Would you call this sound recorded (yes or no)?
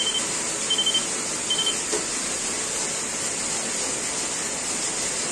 yes